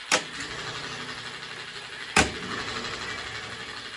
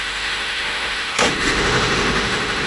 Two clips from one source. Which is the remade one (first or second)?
second